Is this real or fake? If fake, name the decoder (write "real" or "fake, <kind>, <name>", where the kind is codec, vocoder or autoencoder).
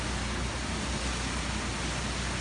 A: real